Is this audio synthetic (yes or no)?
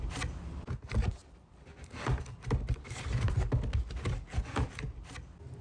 no